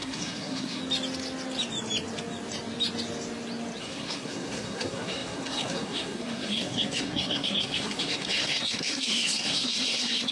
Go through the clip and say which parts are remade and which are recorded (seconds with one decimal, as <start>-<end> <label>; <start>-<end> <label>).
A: 0.0-0.8 remade; 0.8-3.8 recorded; 3.8-10.3 remade